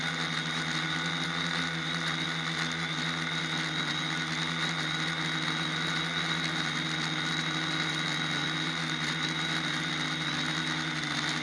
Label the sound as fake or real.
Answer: real